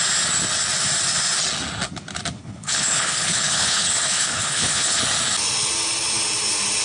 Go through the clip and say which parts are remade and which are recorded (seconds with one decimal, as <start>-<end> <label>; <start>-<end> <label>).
0.0-2.4 recorded; 2.4-5.0 remade; 5.0-6.8 recorded